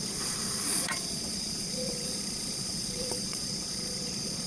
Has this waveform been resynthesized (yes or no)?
yes